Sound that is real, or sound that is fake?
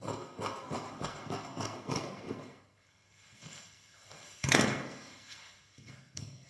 fake